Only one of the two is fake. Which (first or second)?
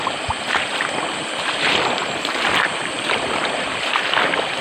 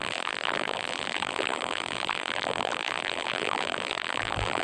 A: second